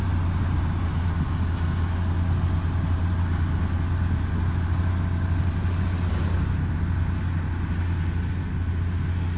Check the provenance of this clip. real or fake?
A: real